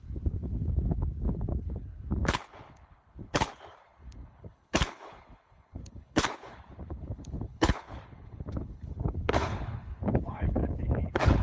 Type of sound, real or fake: fake